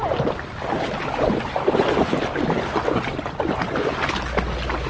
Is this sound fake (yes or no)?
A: no